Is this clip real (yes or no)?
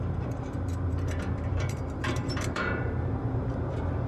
no